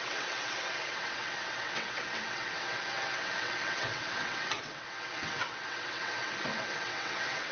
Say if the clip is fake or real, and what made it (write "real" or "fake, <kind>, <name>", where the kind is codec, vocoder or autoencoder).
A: fake, vocoder, WaveNeXt